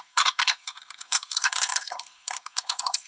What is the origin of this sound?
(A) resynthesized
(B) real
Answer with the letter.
A